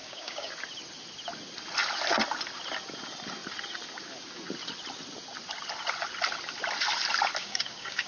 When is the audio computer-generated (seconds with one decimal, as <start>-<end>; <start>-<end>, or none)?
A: 0.0-0.5; 7.4-8.1